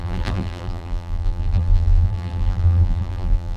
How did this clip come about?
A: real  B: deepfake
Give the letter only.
B